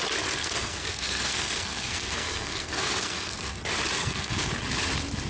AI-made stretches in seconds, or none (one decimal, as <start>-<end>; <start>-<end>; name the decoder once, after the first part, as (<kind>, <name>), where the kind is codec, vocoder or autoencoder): 0.4-3.6 (codec, SNAC); 4.0-4.5